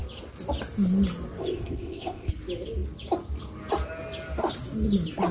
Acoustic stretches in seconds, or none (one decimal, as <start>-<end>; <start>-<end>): 0.0-1.4; 2.3-5.3